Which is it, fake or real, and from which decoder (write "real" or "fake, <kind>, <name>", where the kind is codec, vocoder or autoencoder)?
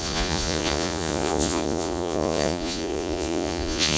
fake, vocoder, Vocos